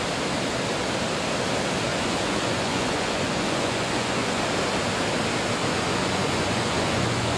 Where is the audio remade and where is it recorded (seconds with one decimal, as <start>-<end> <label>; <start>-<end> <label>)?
0.0-1.9 recorded; 1.9-4.4 remade; 4.4-5.6 recorded; 5.6-7.4 remade